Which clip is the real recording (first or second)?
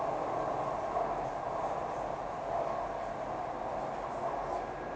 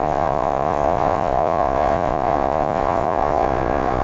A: first